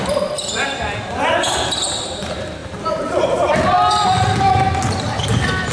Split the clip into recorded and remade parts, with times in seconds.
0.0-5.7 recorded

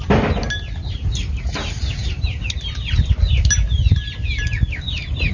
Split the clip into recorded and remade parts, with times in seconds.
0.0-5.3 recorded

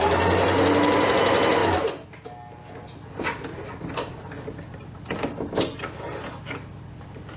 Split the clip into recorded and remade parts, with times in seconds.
0.0-7.4 recorded

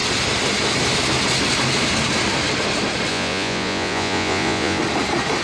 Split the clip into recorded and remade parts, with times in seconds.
0.0-3.1 recorded; 3.1-4.8 remade; 4.8-5.4 recorded